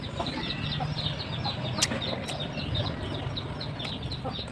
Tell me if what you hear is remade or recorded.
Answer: recorded